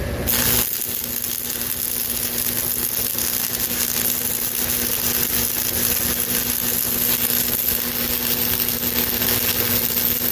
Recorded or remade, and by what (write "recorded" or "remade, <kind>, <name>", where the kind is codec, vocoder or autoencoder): recorded